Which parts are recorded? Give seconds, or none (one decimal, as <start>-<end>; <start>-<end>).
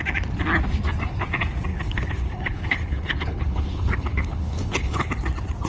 0.0-1.7; 5.1-5.7